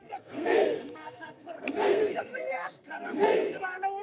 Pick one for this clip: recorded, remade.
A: remade